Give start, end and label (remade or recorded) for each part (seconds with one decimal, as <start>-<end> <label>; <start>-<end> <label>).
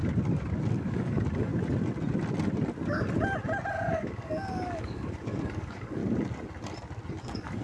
0.0-0.7 recorded; 0.7-1.5 remade; 1.5-3.7 recorded; 3.7-6.0 remade; 6.0-7.1 recorded; 7.1-7.6 remade